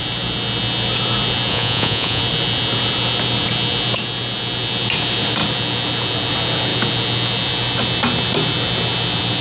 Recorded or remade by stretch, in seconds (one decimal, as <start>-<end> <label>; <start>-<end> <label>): 0.0-1.5 recorded; 1.5-2.2 remade; 2.2-9.4 recorded